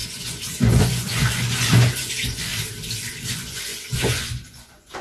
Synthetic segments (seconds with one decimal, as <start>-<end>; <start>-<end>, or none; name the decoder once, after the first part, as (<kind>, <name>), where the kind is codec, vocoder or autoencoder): 0.0-2.5 (vocoder, Vocos); 3.3-5.0